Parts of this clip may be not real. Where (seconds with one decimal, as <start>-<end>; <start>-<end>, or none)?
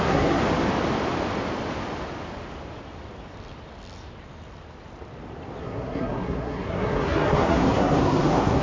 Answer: 0.0-0.4; 5.6-8.6